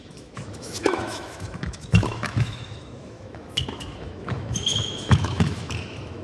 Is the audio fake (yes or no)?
yes